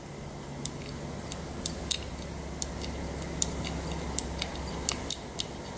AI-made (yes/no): no